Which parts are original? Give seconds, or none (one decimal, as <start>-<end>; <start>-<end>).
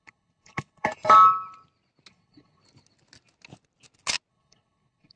0.9-2.1; 2.6-4.3